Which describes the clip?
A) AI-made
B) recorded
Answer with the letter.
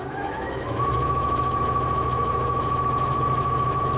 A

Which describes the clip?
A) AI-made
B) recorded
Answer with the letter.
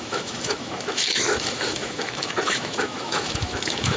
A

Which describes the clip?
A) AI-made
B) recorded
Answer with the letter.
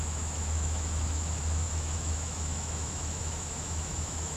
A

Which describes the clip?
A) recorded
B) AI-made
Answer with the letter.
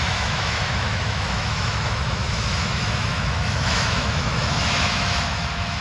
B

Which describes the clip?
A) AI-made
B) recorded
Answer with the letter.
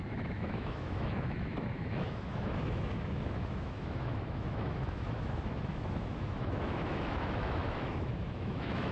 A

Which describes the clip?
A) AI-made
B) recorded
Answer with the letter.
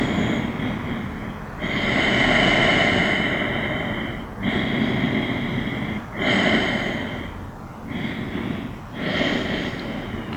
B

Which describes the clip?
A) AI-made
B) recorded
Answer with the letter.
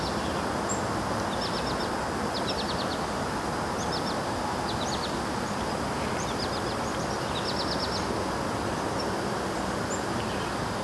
B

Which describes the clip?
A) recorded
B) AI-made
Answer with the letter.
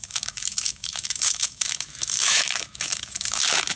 B